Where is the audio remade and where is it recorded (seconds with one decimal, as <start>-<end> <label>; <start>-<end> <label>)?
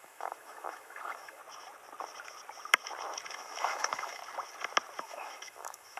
0.0-1.4 remade; 1.4-3.3 recorded; 3.3-4.2 remade; 4.2-5.0 recorded; 5.0-6.0 remade